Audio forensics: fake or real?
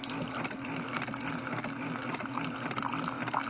real